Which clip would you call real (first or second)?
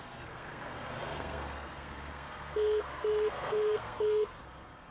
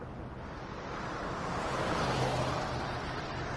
second